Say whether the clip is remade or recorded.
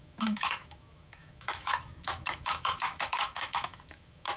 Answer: remade